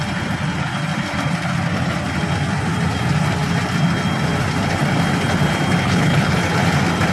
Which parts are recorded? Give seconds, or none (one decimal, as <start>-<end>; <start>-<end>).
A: 0.0-5.8; 6.4-7.1